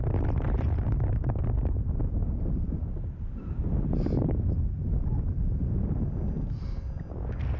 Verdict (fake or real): real